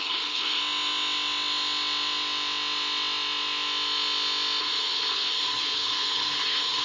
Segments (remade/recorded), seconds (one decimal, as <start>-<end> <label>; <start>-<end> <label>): 0.0-0.6 remade; 0.6-4.6 recorded; 4.6-6.8 remade